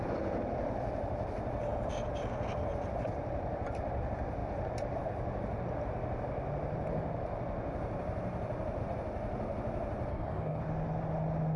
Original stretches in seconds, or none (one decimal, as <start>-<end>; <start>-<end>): 0.0-10.1; 10.6-11.6